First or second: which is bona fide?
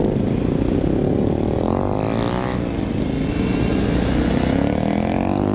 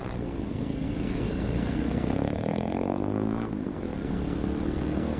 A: first